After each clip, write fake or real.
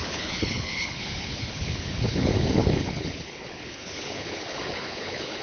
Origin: fake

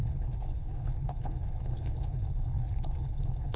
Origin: fake